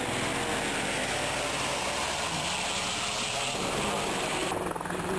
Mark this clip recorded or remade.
recorded